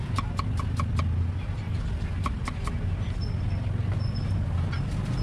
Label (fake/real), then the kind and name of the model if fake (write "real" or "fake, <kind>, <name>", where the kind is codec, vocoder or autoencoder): real